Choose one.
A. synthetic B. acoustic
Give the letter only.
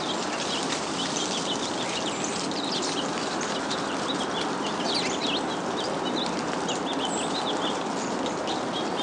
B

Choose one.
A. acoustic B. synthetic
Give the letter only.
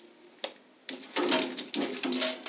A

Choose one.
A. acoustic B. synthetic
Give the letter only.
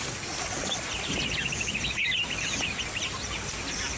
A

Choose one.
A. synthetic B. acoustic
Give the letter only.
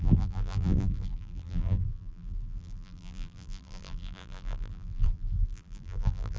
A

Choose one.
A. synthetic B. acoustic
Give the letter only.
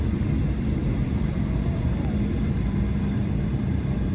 A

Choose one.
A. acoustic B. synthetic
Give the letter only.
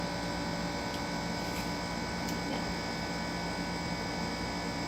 A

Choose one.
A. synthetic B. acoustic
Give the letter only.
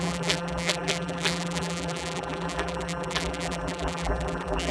A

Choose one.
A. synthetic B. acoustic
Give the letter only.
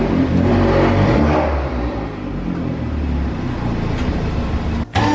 B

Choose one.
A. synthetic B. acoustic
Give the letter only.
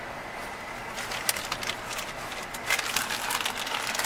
B